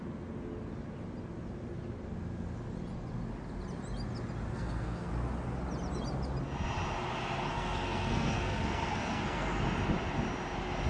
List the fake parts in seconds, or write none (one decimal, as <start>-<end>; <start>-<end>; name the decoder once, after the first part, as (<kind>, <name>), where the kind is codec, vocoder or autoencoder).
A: 4.5-5.1 (codec, SNAC); 7.5-9.6